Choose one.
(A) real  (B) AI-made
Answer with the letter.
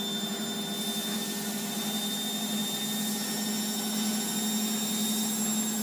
A